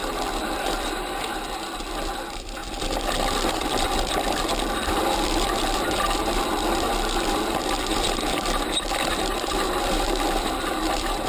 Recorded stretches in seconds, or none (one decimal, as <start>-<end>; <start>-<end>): 2.6-3.5